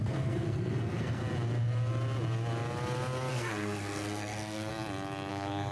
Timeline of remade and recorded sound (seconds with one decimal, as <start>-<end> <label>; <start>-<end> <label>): 0.0-1.2 remade; 1.2-3.3 recorded; 3.3-4.7 remade; 4.7-5.3 recorded; 5.3-5.7 remade